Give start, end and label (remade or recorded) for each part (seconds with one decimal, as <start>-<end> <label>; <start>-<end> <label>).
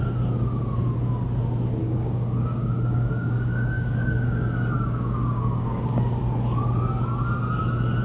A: 0.0-1.8 recorded; 1.8-6.2 remade; 6.2-8.0 recorded